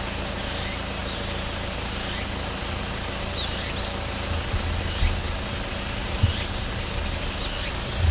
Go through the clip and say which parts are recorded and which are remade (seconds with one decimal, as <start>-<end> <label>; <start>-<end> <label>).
0.0-1.0 recorded; 1.0-3.8 remade; 3.8-6.0 recorded; 6.0-6.5 remade; 6.5-8.1 recorded